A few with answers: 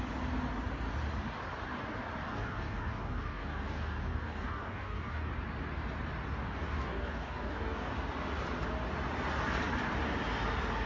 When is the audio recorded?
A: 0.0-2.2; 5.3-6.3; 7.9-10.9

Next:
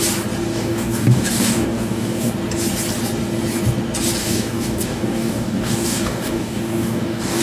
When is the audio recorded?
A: 0.0-0.5; 2.3-4.2

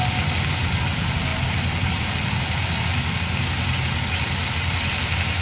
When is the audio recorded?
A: 0.0-5.4

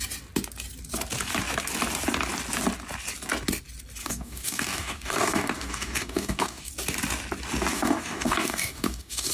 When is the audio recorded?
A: 0.0-4.0; 6.7-7.7

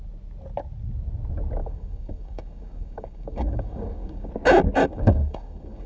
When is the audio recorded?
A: 0.0-1.6; 4.3-4.8

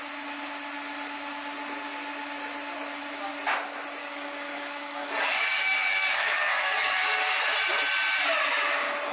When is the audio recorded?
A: 0.0-4.0; 7.0-9.1

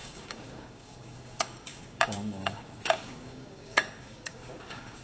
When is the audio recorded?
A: none